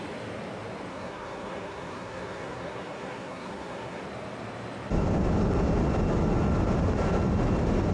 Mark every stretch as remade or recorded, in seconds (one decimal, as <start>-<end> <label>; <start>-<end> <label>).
0.0-0.9 recorded; 0.9-4.0 remade; 4.0-7.9 recorded